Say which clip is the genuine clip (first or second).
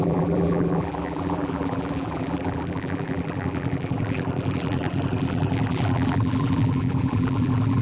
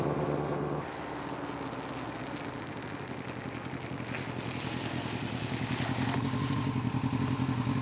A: second